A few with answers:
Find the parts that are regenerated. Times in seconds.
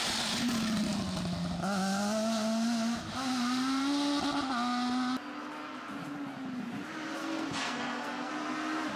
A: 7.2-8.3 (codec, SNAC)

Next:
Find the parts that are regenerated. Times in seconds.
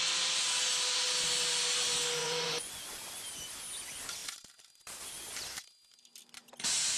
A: 2.2-2.8 (vocoder, Vocos)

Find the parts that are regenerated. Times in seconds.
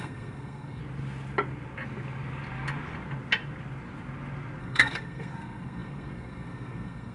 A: 0.0-0.8 (codec, SNAC); 4.6-7.1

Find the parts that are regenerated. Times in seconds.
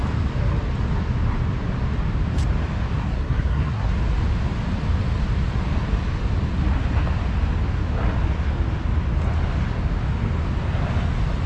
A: 3.0-3.9 (codec, SNAC)